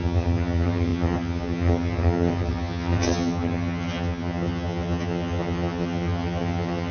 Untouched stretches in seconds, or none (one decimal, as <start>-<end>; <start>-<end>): none